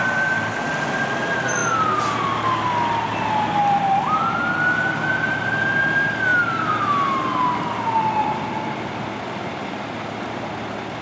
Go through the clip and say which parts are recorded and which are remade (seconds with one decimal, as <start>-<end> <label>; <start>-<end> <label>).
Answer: 0.0-11.0 recorded